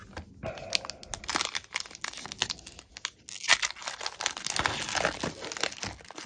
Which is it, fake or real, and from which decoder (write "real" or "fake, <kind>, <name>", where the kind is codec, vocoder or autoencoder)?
real